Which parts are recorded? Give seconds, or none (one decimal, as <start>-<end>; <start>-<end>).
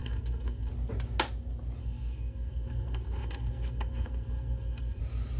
0.7-1.8; 5.0-5.4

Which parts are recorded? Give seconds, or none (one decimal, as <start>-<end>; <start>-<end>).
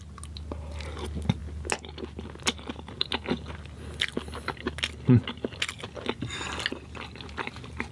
0.0-7.9